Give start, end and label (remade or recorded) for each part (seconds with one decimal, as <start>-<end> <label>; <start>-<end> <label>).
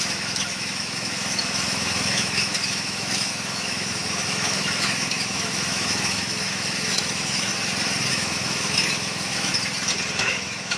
0.0-7.5 remade; 7.5-8.1 recorded; 8.1-9.5 remade; 9.5-10.2 recorded; 10.2-10.8 remade